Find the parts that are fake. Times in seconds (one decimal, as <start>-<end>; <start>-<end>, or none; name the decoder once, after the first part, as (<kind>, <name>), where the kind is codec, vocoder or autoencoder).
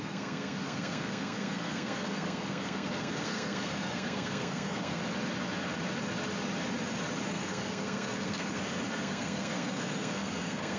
0.0-5.0 (codec, SNAC); 7.3-10.8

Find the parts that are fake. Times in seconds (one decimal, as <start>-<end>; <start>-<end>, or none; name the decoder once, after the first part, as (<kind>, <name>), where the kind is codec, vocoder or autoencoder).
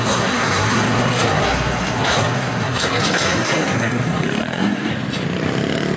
0.0-4.9 (codec, SNAC)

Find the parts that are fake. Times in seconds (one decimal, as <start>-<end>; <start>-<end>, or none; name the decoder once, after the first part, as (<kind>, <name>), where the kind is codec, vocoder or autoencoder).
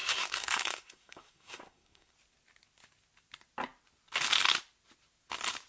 0.0-2.1 (codec, SNAC)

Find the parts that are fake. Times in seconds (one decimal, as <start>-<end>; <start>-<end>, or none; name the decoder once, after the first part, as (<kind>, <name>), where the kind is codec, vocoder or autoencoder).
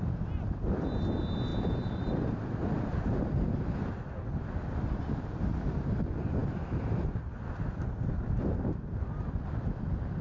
none